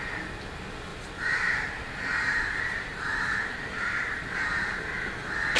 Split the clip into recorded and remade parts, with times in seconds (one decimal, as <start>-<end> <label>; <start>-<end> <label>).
0.0-0.9 recorded; 0.9-4.3 remade; 4.3-5.6 recorded